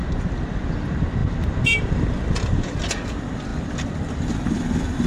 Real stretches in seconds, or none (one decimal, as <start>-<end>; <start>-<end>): 0.0-5.1